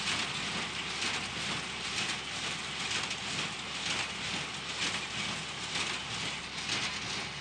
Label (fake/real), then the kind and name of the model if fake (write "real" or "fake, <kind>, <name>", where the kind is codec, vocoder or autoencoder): real